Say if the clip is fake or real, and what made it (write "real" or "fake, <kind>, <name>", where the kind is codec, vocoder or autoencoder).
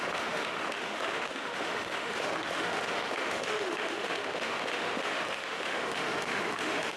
fake, autoencoder, DAC-VAE